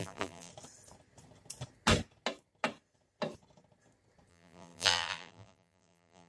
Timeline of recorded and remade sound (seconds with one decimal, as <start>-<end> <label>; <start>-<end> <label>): 0.0-0.5 remade; 0.5-4.3 recorded; 4.3-6.3 remade